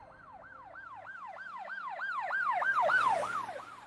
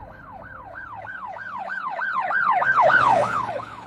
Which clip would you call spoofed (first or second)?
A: second